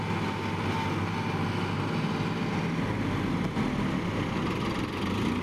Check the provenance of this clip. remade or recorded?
recorded